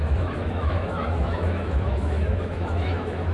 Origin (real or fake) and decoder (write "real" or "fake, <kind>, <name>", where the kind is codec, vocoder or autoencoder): fake, autoencoder, DAC-VAE